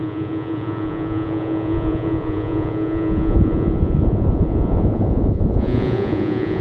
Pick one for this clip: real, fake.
fake